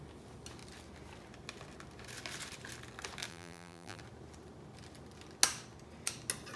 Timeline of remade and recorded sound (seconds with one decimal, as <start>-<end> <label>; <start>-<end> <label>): 0.0-3.3 recorded; 3.3-4.0 remade; 4.0-6.6 recorded

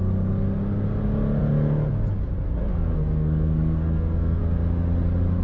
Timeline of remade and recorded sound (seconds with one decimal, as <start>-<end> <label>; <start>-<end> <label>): 0.0-2.7 recorded; 2.7-4.4 remade; 4.4-5.4 recorded

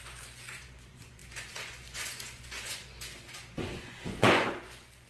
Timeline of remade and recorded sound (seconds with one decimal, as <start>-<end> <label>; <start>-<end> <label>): 0.0-5.1 remade

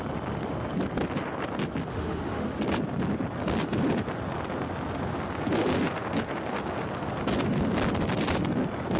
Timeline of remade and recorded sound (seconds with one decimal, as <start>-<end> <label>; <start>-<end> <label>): 0.0-1.9 recorded; 1.9-2.6 remade; 2.6-9.0 recorded

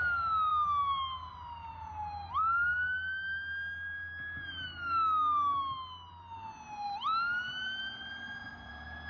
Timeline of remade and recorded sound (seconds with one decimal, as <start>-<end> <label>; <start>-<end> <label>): 0.0-9.1 recorded

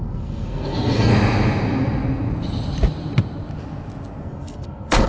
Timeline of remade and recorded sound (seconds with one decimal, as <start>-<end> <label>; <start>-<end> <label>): 0.0-1.1 remade; 1.1-4.2 recorded; 4.2-5.1 remade